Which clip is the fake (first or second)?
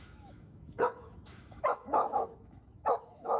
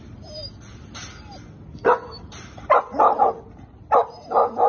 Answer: first